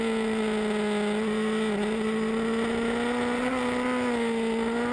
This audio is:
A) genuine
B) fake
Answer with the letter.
A